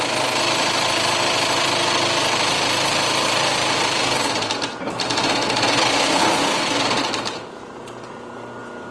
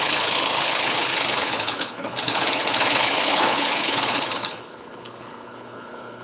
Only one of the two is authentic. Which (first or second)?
first